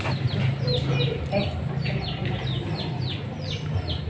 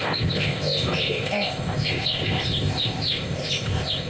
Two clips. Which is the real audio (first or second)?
first